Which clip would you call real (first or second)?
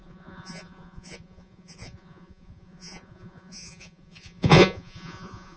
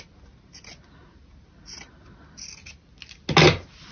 second